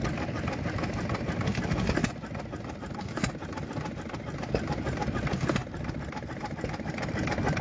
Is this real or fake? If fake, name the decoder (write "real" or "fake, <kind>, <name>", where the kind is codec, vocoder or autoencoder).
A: real